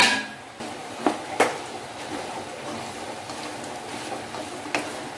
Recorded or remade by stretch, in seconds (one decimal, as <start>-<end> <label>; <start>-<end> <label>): 0.0-0.8 recorded; 0.8-3.4 remade; 3.4-3.9 recorded; 3.9-4.5 remade; 4.5-5.2 recorded

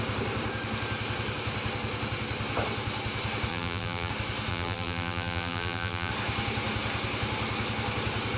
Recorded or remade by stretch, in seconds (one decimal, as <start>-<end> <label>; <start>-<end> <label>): 0.0-3.5 recorded; 3.5-4.1 remade; 4.1-4.5 recorded; 4.5-6.1 remade; 6.1-8.4 recorded

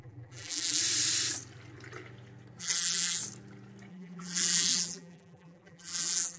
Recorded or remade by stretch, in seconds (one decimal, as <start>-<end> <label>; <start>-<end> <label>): 0.0-0.8 remade; 0.8-2.6 recorded; 2.6-3.2 remade; 3.2-3.9 recorded; 3.9-6.4 remade

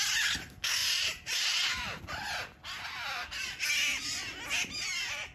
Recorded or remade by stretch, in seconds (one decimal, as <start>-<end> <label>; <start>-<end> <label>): 0.0-0.8 recorded; 0.8-2.0 remade; 2.0-5.3 recorded